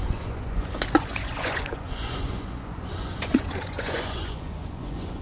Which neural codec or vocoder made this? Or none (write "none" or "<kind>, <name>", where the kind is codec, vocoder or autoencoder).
vocoder, Vocos